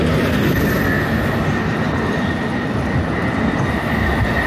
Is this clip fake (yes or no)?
no